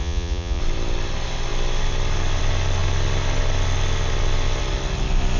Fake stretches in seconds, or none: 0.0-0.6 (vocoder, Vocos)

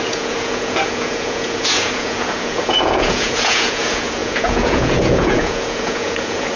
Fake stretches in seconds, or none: 0.0-6.6 (vocoder, Vocos)

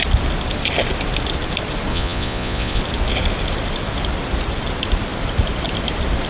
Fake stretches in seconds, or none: 1.9-2.8 (vocoder, Vocos)

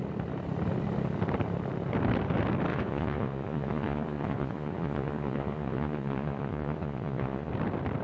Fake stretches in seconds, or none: 2.7-7.5 (vocoder, Vocos)